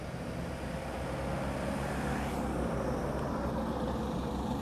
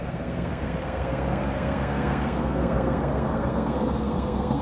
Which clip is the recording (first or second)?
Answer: first